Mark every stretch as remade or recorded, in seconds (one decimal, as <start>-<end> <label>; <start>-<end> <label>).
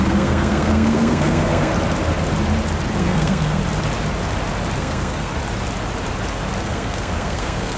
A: 0.0-1.7 remade; 1.7-3.0 recorded; 3.0-3.6 remade; 3.6-4.8 recorded; 4.8-5.3 remade; 5.3-6.6 recorded; 6.6-7.8 remade